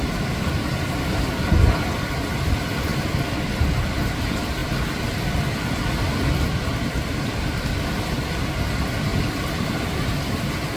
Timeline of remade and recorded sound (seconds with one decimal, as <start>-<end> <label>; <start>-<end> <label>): 0.0-10.8 recorded